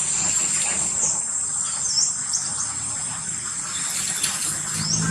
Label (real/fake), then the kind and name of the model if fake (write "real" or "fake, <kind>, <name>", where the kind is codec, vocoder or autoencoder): real